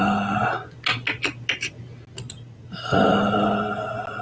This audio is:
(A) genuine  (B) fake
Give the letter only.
A